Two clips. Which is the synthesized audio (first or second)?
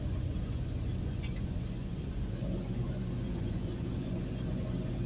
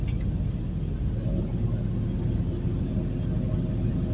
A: first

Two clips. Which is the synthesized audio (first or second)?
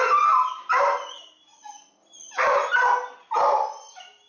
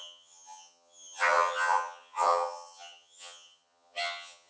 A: second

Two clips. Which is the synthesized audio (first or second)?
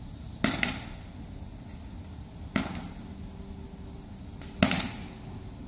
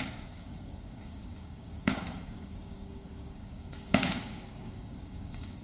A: second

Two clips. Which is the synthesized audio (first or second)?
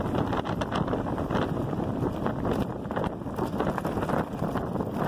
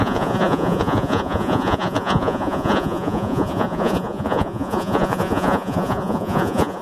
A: second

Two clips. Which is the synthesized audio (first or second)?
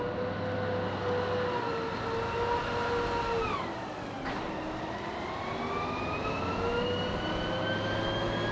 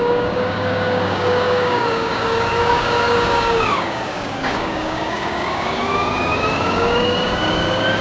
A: second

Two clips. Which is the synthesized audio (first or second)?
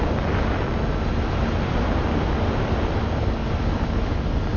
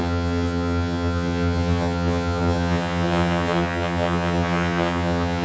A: second